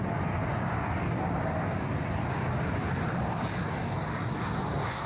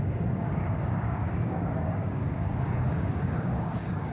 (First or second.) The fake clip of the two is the second